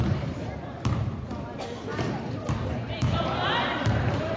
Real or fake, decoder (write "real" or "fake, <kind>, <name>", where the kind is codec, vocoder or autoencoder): fake, vocoder, BigVGAN v2